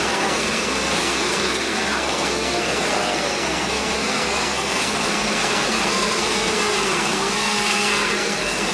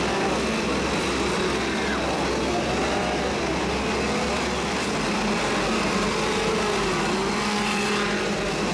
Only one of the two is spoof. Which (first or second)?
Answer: first